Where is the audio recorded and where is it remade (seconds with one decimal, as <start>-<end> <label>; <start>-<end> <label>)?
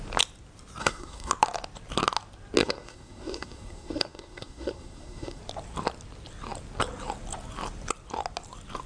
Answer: 0.0-0.8 recorded; 0.8-1.3 remade; 1.3-2.6 recorded; 2.6-5.4 remade; 5.4-8.9 recorded